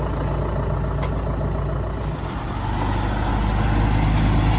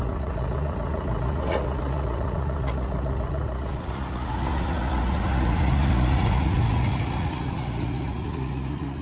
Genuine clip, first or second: first